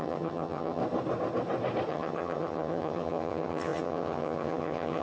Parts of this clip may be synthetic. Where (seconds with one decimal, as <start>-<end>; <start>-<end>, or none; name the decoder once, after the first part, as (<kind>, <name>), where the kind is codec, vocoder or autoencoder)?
0.0-0.8 (vocoder, HiFi-GAN); 1.9-5.0